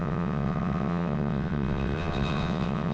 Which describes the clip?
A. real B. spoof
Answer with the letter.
B